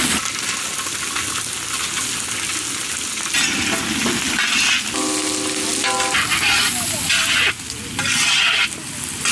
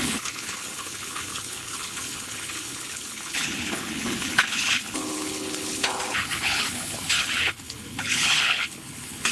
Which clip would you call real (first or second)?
first